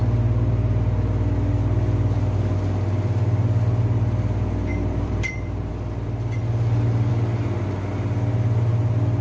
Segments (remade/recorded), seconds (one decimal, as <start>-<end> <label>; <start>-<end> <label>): 0.0-4.7 recorded; 4.7-5.7 remade; 5.7-9.2 recorded